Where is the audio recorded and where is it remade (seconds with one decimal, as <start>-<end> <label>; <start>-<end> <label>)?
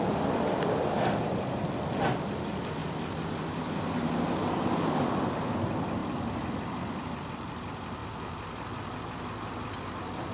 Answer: 0.0-10.3 recorded